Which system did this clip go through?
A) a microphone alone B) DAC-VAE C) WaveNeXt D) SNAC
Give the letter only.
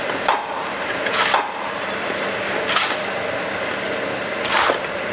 A